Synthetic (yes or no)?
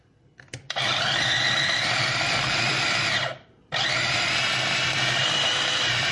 yes